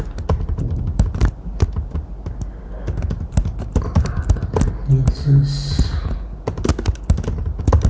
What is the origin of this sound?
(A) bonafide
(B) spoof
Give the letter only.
A